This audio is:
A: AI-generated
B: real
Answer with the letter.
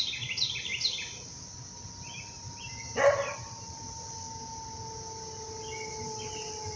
B